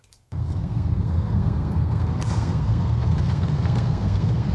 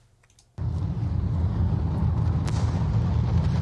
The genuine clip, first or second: second